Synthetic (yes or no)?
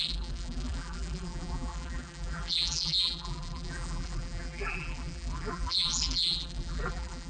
yes